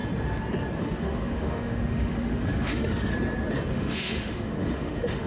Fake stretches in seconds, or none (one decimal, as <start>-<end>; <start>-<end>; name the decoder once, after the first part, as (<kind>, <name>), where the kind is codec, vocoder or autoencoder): 0.8-3.1 (autoencoder, DAC-VAE); 3.7-5.3